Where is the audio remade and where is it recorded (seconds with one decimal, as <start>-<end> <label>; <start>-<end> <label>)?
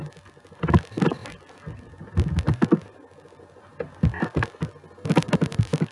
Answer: 0.0-5.9 recorded